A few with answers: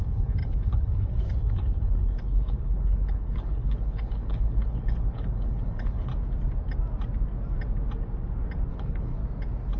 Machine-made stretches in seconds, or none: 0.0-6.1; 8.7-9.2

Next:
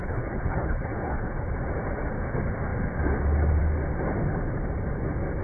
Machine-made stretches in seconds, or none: 0.0-1.5

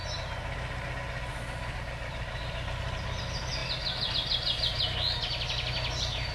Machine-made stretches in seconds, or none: none